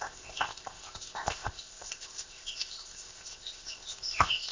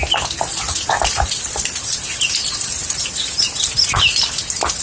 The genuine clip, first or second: second